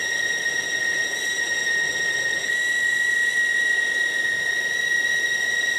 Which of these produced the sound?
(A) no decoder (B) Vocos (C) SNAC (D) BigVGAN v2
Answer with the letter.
A